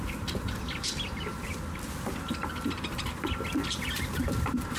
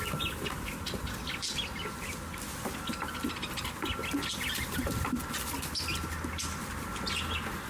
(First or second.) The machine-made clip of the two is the first